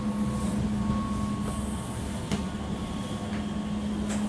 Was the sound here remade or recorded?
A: recorded